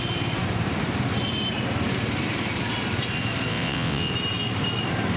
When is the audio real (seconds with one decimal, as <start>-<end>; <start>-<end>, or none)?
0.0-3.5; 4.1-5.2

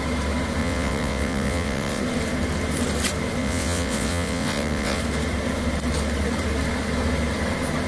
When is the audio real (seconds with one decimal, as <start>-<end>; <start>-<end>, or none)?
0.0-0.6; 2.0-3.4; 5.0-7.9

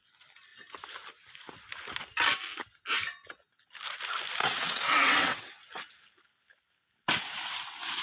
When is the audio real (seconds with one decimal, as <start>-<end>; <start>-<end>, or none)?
0.0-4.4; 5.6-8.0